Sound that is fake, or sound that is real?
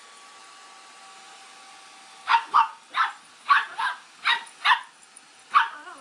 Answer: real